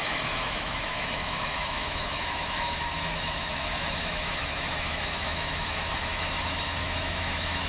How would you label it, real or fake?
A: fake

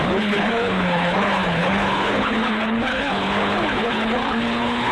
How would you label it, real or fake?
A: fake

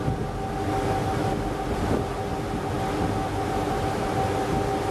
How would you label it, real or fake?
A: real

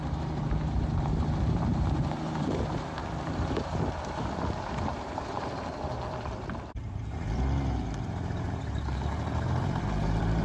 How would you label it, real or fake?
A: fake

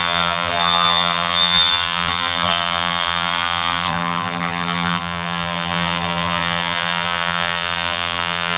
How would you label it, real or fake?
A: fake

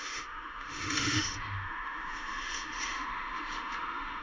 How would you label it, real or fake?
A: fake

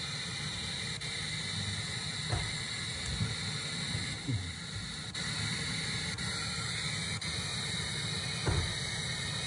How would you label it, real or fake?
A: real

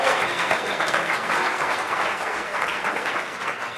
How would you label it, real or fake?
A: fake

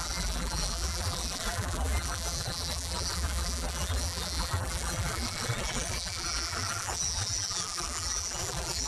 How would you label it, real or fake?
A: fake